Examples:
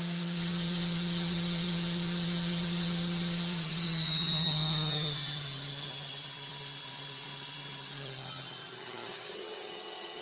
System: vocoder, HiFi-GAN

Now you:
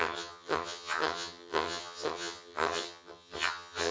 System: vocoder, HiFi-GAN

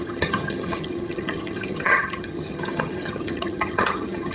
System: vocoder, HiFi-GAN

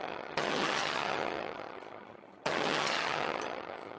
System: vocoder, HiFi-GAN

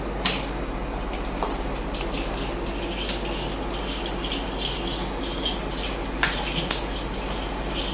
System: none